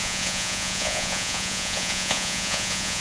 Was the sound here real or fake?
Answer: fake